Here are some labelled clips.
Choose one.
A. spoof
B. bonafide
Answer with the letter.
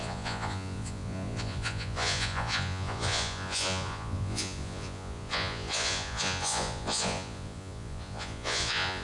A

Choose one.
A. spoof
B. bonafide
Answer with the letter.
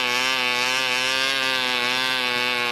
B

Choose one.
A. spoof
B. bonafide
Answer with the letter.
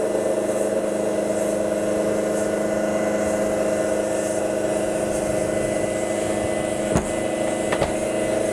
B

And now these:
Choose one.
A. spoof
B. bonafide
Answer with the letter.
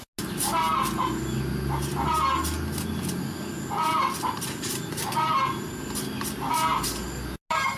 B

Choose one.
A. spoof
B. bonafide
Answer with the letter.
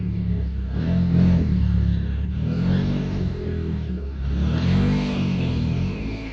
A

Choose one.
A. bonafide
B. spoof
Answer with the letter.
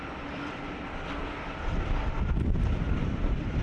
B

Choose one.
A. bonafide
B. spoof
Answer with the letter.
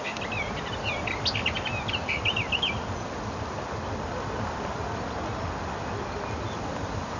A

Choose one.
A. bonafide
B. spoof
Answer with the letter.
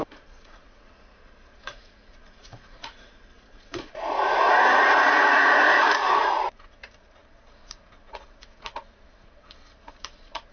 B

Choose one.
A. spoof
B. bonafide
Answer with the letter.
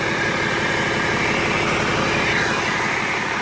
B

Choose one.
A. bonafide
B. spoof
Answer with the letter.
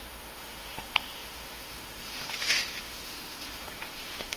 B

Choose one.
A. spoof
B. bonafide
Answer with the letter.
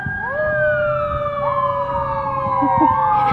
B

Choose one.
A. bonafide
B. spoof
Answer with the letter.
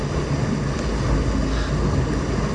A